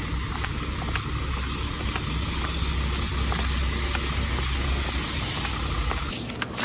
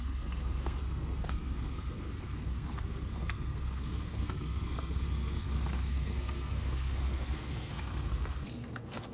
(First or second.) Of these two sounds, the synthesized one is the second